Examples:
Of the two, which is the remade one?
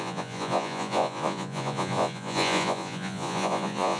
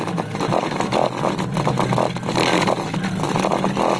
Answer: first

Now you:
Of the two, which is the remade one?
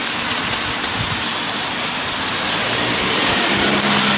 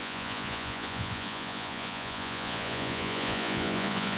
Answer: second